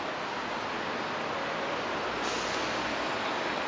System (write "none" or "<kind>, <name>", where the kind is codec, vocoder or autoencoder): none